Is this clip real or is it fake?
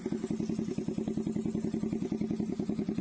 real